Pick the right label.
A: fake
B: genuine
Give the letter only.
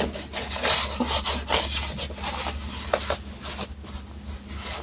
B